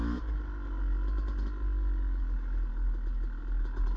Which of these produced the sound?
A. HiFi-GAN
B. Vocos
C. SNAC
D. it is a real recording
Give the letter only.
D